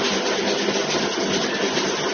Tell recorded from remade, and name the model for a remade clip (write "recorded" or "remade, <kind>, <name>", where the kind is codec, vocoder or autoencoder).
recorded